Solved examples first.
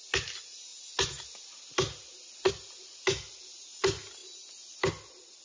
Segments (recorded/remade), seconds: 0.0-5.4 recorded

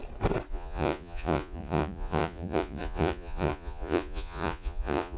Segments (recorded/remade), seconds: 0.0-0.5 recorded; 0.5-5.2 remade

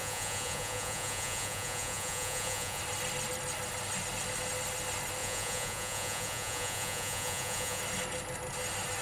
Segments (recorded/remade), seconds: 0.0-2.8 remade; 2.8-5.2 recorded; 5.2-7.8 remade; 7.8-9.0 recorded

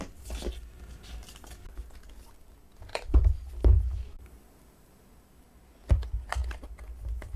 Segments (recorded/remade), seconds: 0.0-2.9 recorded; 2.9-3.5 remade; 3.5-7.4 recorded

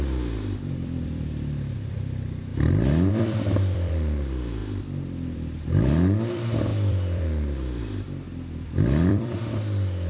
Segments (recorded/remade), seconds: 0.0-2.5 remade; 2.5-3.1 recorded; 3.1-10.1 remade

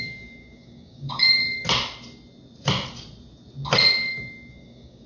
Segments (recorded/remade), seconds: 0.0-1.4 remade; 1.4-4.5 recorded; 4.5-5.1 remade